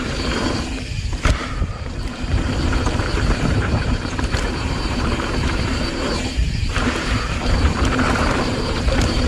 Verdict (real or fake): fake